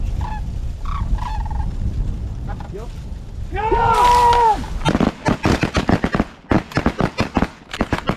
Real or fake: real